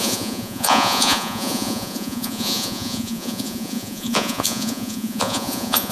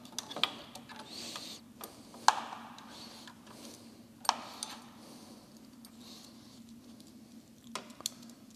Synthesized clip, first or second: first